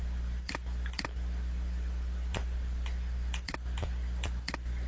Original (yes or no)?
no